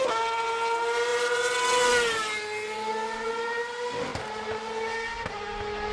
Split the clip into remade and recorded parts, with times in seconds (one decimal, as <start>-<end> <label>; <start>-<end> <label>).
0.0-5.9 recorded